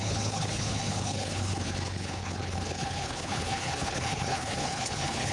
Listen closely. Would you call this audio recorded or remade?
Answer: remade